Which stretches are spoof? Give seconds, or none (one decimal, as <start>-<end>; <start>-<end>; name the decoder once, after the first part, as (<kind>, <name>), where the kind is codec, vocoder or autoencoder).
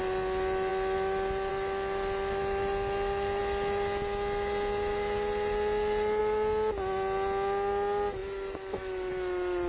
none